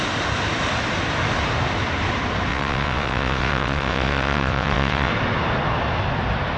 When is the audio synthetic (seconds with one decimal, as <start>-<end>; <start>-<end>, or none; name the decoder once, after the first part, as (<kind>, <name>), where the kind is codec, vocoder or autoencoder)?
2.5-5.1 (vocoder, WaveNeXt)